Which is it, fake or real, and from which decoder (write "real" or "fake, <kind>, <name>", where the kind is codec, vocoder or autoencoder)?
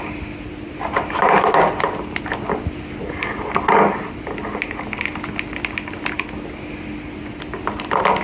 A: real